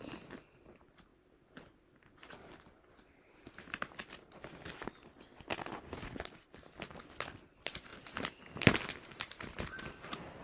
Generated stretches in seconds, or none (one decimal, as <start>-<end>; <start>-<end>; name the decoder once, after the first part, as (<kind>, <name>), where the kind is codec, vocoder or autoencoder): none